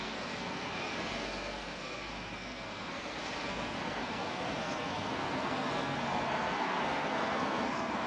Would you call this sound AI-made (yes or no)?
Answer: yes